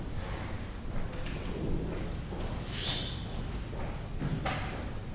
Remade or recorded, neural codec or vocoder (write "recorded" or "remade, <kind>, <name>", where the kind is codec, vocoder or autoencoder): recorded